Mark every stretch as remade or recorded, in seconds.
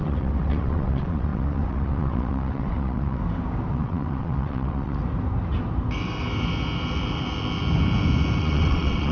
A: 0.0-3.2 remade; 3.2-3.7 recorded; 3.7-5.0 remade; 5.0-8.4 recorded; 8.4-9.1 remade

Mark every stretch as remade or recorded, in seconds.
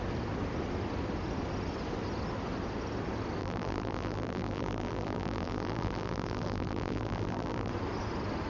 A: 0.0-3.4 recorded; 3.4-7.7 remade; 7.7-8.5 recorded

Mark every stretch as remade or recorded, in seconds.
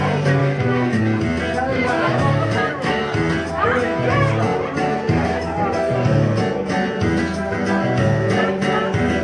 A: 0.0-0.4 recorded; 0.4-1.0 remade; 1.0-1.7 recorded; 1.7-3.0 remade; 3.0-9.2 recorded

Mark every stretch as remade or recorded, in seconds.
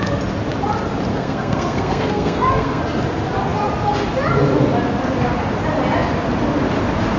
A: 0.0-1.1 recorded; 1.1-2.8 remade; 2.8-7.2 recorded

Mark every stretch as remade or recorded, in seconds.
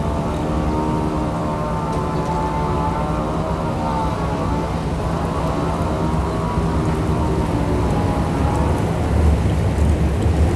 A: 0.0-10.6 recorded